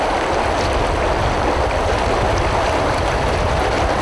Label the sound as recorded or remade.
recorded